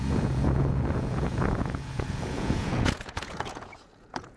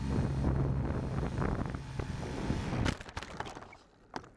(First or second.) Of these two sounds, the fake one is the first